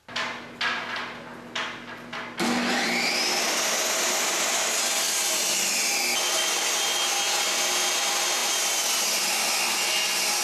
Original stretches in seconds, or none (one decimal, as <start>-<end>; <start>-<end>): 0.0-10.4